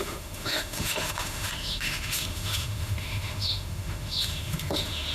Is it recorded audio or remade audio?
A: remade